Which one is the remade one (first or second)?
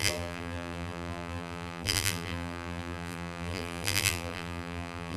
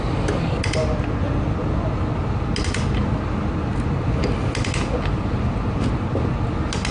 first